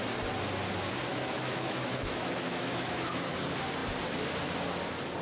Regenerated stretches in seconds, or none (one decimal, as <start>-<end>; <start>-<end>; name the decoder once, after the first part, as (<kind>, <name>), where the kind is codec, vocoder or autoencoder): 1.1-3.3 (autoencoder, DAC-VAE)